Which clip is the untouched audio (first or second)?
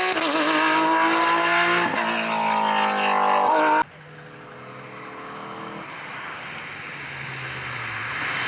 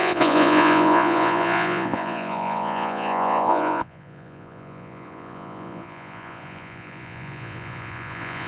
first